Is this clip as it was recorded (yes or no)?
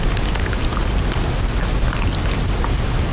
yes